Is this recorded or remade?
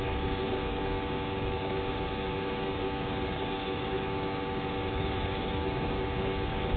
remade